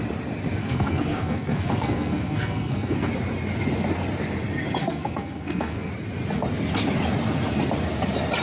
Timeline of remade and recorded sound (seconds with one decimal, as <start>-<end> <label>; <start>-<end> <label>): 0.0-0.6 recorded; 0.6-3.1 remade; 3.1-4.8 recorded; 4.8-5.9 remade; 5.9-8.4 recorded